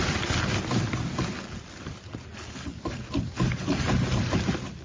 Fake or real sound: real